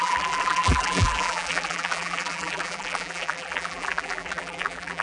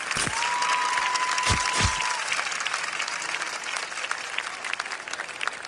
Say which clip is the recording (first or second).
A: second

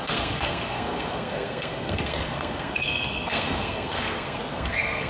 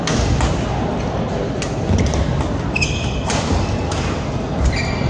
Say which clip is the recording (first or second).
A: second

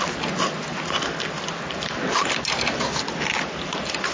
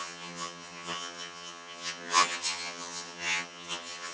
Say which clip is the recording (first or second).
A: first